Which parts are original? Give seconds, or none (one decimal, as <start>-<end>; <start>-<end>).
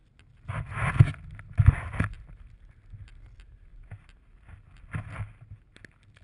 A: 0.0-6.2